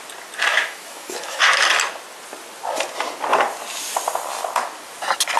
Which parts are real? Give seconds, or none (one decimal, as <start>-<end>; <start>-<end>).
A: 0.0-0.5; 1.4-5.4

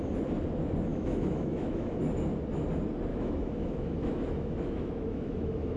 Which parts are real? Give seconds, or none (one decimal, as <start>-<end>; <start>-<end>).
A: 0.0-0.9; 1.9-3.1